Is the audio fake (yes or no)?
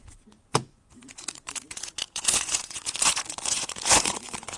yes